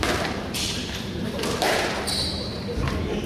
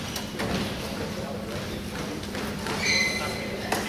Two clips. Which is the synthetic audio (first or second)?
first